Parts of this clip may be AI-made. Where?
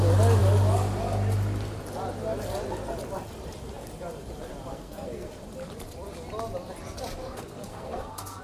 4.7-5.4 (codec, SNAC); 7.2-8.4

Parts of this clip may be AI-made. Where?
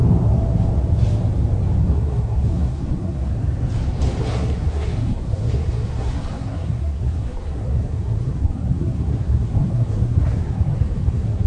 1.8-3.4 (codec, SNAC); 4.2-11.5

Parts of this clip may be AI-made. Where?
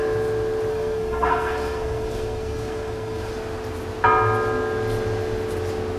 0.7-3.3 (codec, SNAC)